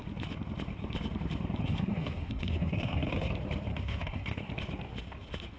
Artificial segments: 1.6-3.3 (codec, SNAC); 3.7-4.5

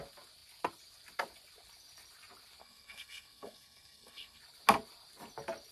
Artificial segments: 2.6-4.4 (codec, SNAC)

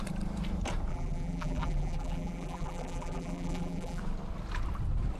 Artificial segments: 0.9-4.0 (vocoder, BigVGAN v2)

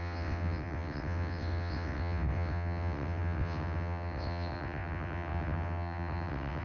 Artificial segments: 0.0-6.6 (vocoder, WaveNeXt)

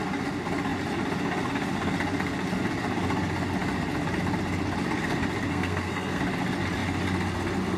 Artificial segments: 5.5-6.2 (codec, SNAC)

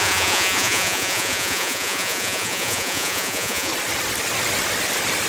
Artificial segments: 0.0-3.7 (vocoder, Vocos)

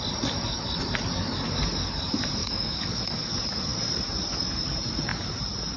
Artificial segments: 2.4-3.0 (codec, DAC)